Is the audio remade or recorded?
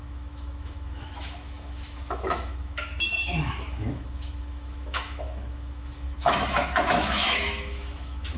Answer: remade